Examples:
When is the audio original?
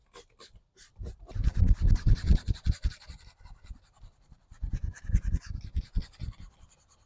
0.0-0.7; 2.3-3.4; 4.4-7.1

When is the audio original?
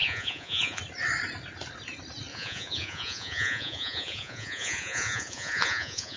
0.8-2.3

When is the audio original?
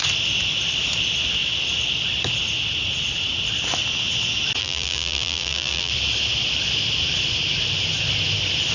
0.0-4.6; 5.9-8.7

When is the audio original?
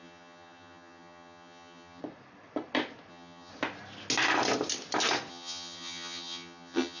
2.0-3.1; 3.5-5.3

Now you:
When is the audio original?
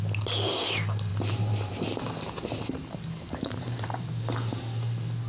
0.0-1.1; 4.2-5.3